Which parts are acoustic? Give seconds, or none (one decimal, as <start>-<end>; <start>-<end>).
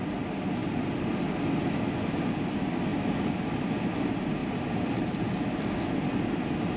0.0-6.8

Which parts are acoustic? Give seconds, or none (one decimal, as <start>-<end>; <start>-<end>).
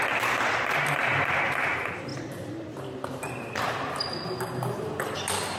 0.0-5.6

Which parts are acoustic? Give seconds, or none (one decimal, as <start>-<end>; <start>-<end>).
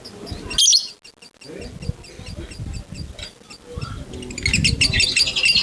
0.0-5.6